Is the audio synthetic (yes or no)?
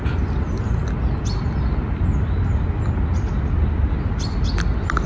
no